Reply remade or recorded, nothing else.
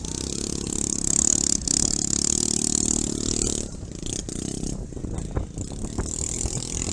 recorded